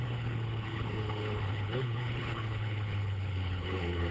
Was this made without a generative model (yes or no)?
no